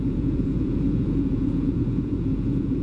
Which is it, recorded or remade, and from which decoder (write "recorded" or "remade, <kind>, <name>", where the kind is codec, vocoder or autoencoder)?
remade, vocoder, Vocos